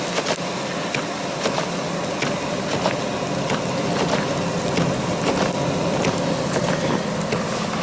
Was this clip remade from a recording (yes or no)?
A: no